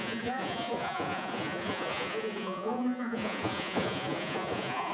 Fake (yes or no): yes